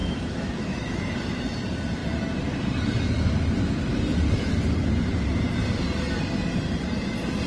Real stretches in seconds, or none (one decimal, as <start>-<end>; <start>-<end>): 1.0-7.5